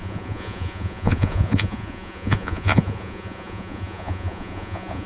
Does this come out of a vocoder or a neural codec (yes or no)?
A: yes